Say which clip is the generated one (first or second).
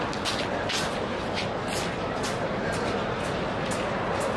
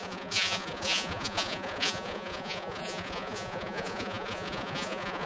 second